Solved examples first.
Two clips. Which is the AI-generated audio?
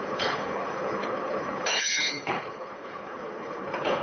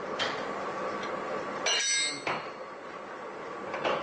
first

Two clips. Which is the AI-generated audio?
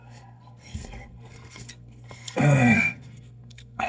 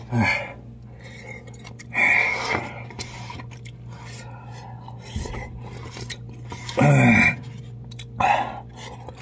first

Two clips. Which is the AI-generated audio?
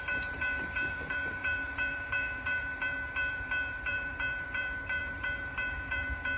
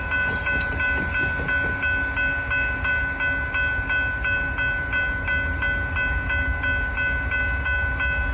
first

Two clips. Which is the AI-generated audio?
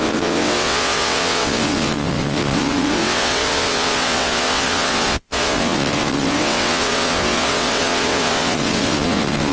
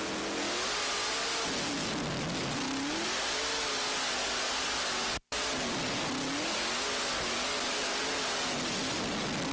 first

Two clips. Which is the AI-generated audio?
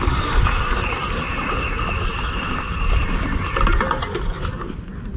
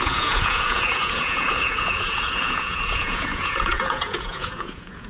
second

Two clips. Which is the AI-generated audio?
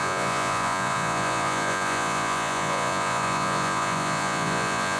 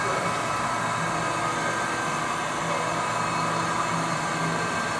first